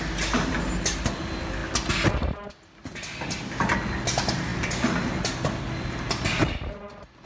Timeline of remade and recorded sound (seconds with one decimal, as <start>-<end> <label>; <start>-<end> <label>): 0.0-7.3 recorded